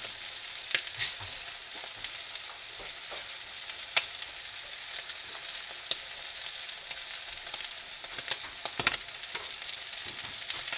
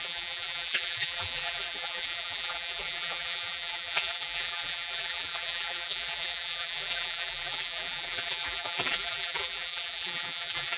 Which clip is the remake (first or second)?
second